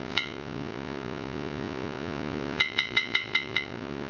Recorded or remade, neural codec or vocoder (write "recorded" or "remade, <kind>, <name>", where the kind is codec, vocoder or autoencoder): remade, vocoder, Vocos